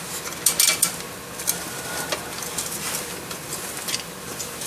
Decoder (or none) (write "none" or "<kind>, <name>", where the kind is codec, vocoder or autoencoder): none